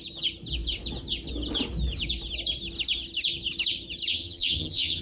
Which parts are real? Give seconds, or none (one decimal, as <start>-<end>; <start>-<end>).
0.0-4.1